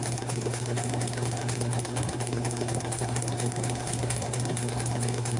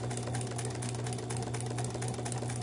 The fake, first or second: first